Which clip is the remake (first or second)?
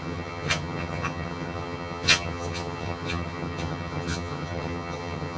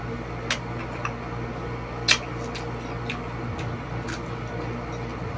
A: first